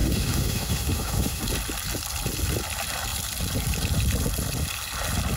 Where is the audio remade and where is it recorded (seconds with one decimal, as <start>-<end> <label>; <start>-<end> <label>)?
0.0-1.4 remade; 1.4-5.4 recorded